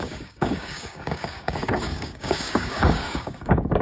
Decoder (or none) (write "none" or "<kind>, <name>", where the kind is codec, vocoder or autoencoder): codec, DAC